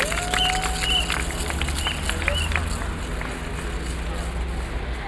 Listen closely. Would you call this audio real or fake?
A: real